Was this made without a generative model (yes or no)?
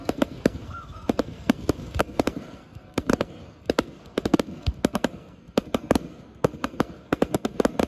no